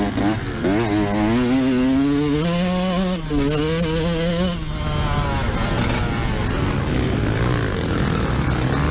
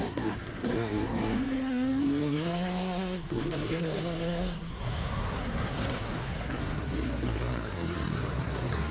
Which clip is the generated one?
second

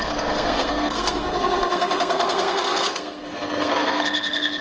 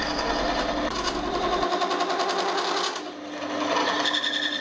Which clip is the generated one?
first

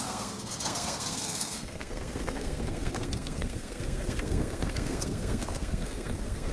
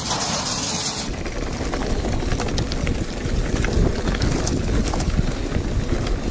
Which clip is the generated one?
first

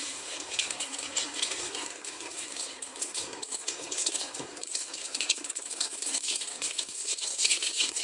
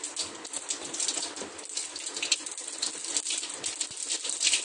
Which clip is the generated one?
first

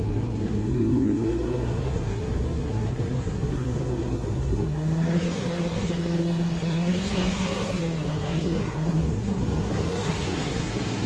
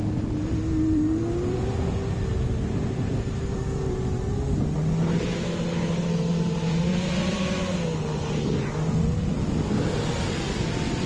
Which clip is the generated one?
first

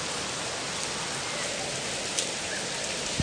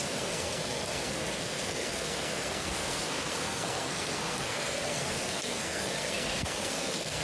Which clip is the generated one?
second